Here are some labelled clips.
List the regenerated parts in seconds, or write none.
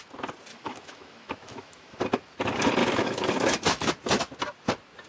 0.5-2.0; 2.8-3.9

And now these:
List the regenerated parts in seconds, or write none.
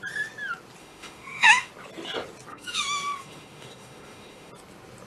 0.8-1.7; 2.5-4.5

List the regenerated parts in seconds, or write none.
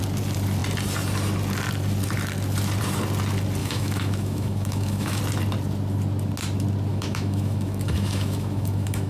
3.6-5.2; 6.9-9.1